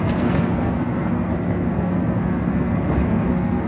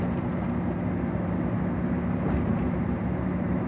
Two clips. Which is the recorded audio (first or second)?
second